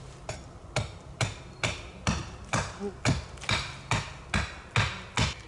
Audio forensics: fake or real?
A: real